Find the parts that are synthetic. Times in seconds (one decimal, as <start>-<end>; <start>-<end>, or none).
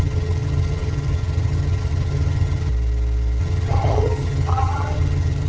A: 0.0-2.7; 3.4-5.5